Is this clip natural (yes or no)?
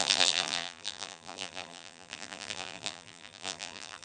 no